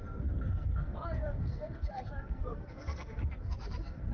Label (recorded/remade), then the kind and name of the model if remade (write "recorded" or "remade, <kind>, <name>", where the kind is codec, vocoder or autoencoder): remade, codec, SNAC